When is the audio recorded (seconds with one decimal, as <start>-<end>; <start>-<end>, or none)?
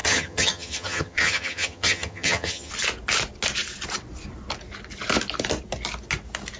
2.7-6.6